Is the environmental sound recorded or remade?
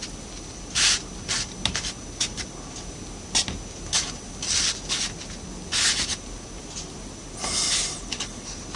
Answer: recorded